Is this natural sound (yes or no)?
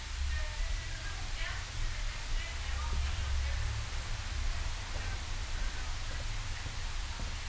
yes